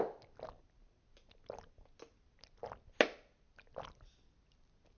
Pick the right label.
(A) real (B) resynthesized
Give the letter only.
A